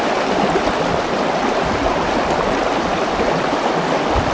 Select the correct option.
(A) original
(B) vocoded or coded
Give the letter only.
A